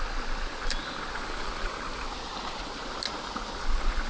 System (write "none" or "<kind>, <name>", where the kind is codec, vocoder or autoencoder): none